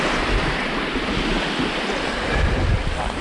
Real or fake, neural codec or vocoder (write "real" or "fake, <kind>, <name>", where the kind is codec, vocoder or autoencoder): real